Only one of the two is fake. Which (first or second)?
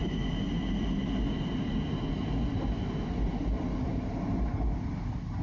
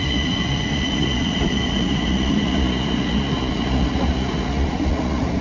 second